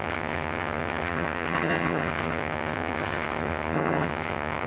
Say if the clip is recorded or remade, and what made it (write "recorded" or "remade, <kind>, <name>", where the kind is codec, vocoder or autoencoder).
remade, vocoder, HiFi-GAN